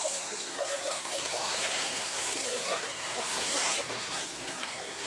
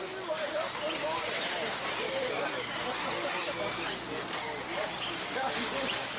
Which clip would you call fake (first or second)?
first